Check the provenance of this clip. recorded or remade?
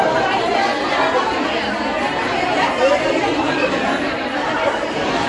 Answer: remade